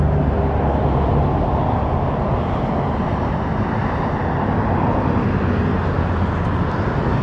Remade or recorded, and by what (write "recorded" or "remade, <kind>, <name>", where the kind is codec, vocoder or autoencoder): recorded